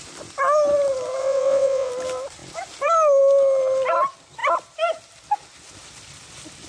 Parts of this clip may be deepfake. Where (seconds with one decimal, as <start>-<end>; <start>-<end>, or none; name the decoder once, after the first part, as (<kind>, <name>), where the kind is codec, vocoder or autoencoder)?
1.2-1.9 (vocoder, WaveNeXt)